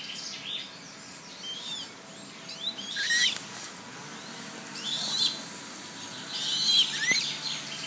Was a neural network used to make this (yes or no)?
no